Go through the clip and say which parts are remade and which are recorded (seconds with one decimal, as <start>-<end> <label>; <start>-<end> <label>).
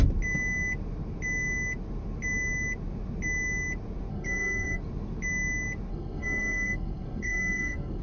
0.0-4.1 recorded; 4.1-4.8 remade; 4.8-5.9 recorded; 5.9-8.0 remade